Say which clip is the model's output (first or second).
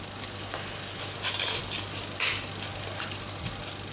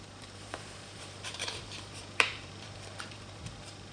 second